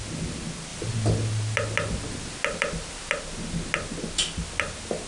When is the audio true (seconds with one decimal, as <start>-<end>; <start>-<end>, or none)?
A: 0.0-5.1